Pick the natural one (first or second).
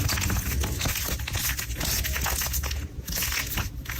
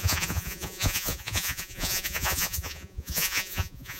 first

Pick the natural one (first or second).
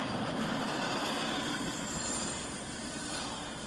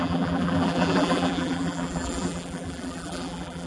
first